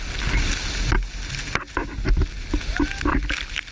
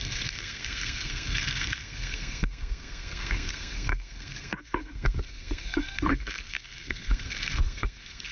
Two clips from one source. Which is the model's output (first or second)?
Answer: second